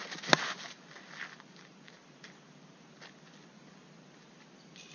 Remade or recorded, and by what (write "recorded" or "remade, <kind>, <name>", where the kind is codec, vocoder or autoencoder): recorded